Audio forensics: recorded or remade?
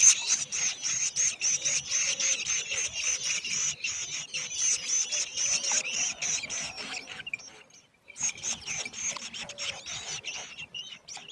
recorded